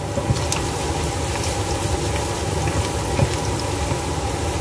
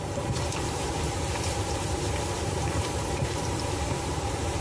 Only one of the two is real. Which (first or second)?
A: first